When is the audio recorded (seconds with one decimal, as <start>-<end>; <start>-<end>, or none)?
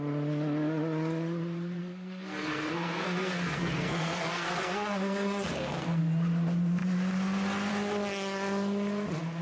0.0-1.8; 6.0-9.4